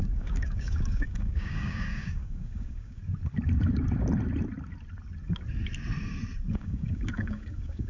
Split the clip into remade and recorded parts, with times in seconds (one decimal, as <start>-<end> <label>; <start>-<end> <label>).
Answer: 0.0-3.0 remade; 3.0-6.5 recorded; 6.5-7.9 remade